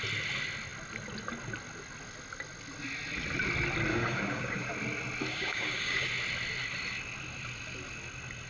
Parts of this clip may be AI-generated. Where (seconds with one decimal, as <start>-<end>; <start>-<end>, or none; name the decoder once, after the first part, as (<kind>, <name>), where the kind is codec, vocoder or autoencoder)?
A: 3.9-4.7 (codec, DAC); 5.3-6.1

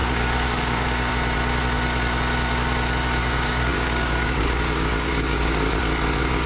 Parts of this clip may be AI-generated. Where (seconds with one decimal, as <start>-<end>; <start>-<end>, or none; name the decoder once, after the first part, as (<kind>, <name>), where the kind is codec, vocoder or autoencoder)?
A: 0.0-1.1 (codec, DAC); 3.2-5.8

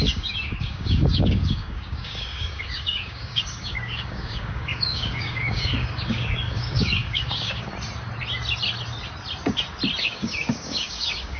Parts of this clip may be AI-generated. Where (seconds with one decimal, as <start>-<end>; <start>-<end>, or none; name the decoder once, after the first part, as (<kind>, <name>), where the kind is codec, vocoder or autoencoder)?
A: 0.0-7.7 (codec, DAC); 10.0-11.4

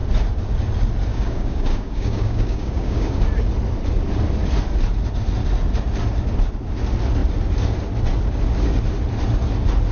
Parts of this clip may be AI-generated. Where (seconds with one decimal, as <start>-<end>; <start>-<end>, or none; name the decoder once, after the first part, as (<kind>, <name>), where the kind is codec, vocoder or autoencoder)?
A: 1.1-3.2 (codec, DAC)

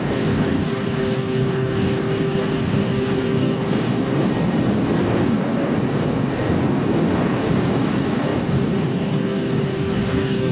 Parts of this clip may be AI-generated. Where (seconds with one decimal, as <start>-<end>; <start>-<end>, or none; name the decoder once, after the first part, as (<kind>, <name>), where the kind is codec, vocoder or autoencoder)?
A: 0.0-4.3 (codec, DAC); 5.0-10.5

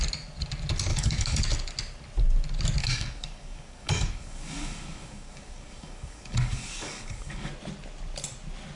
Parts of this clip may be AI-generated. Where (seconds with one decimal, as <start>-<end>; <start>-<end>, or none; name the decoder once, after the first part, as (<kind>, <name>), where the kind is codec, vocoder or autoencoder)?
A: 0.9-1.4 (codec, DAC); 2.8-7.5

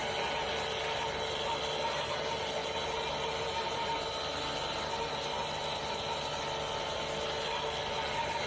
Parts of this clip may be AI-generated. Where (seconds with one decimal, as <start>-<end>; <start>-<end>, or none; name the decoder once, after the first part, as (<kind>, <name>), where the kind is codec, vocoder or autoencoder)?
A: none